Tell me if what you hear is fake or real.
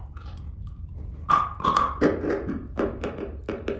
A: real